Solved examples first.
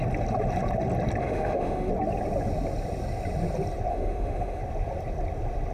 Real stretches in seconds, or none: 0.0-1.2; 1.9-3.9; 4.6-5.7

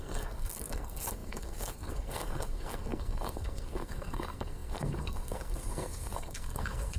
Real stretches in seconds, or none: none

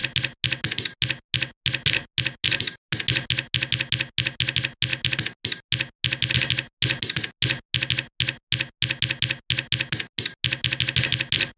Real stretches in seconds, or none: 0.0-11.6

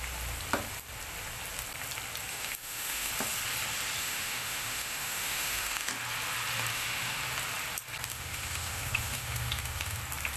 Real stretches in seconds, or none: 0.0-2.3; 3.1-4.0; 5.9-6.7; 7.2-8.1; 10.0-10.4

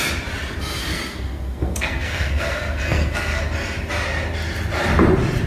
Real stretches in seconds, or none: 0.0-0.8; 3.4-5.5